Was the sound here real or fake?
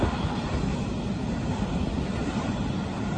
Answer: real